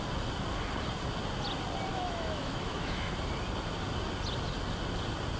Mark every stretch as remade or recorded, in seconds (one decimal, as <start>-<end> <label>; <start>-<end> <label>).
0.0-1.9 recorded; 1.9-3.1 remade; 3.1-5.4 recorded